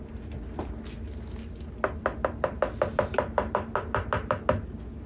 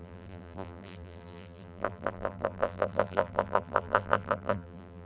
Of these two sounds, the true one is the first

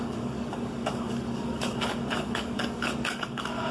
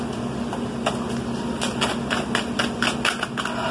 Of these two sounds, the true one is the second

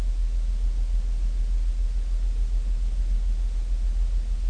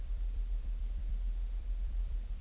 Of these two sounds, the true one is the first